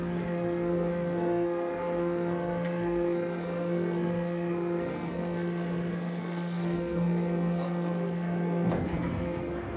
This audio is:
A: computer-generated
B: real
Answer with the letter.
A